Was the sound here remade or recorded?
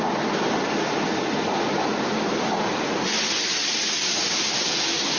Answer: recorded